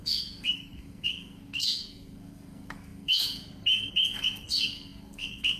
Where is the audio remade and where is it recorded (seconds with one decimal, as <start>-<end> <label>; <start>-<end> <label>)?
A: 0.0-5.6 remade